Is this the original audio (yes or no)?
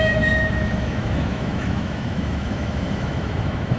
no